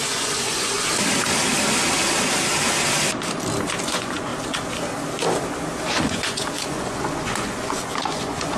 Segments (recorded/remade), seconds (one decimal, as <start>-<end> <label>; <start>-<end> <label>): 0.0-0.9 remade; 0.9-3.8 recorded; 3.8-4.3 remade; 4.3-6.1 recorded; 6.1-8.6 remade